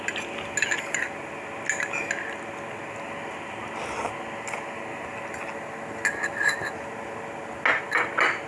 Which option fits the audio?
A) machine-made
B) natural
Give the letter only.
B